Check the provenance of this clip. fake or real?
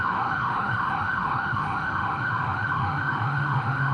fake